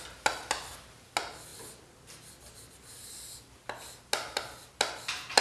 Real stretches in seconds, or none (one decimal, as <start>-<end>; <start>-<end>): 0.0-5.4